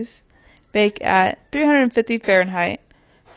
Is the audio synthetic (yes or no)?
yes